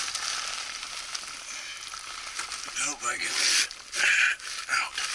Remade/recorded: recorded